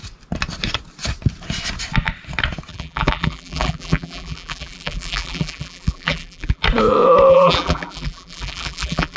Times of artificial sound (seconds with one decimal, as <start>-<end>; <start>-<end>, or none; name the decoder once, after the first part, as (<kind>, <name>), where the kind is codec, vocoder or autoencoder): 2.7-6.6 (vocoder, BigVGAN v2); 7.3-9.2